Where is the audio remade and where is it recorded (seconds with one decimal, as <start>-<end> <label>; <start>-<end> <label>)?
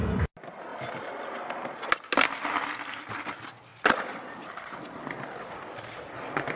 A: 0.0-6.6 recorded